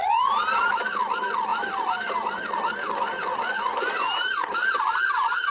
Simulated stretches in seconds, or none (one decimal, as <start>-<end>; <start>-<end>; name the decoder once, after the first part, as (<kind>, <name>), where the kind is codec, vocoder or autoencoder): 1.5-4.8 (vocoder, BigVGAN v2)